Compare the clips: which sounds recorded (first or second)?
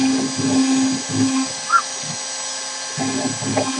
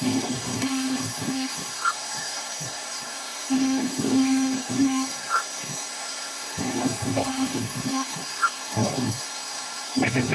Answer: first